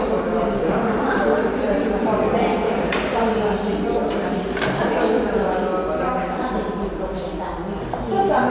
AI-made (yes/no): no